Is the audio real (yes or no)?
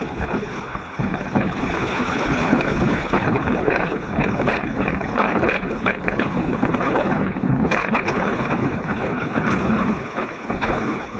no